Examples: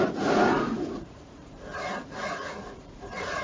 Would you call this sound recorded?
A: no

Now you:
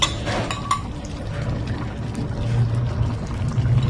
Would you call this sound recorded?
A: yes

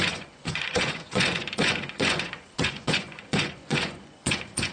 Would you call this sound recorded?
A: no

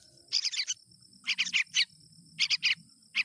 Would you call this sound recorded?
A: yes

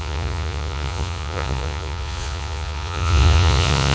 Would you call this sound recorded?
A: no